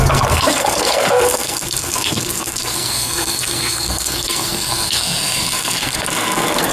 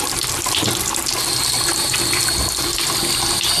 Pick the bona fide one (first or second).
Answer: second